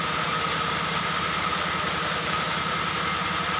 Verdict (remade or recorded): recorded